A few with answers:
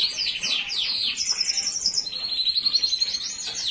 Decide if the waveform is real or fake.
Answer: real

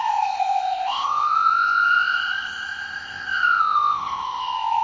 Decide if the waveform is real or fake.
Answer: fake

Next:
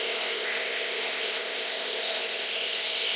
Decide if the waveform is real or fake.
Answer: fake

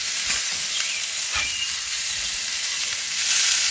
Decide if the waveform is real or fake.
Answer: real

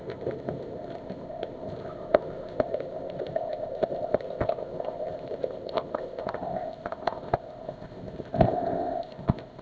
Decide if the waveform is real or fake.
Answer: fake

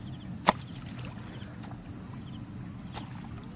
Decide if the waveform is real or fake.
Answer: real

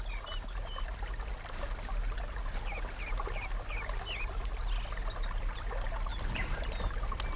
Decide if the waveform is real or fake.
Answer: real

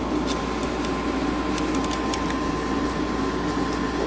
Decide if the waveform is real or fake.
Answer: real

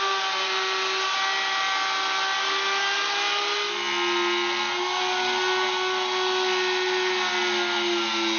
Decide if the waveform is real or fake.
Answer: real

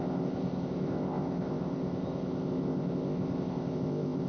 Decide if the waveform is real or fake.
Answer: fake